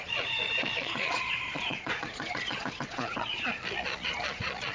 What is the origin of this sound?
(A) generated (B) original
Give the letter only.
A